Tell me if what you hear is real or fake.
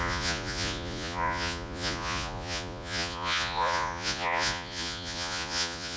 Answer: fake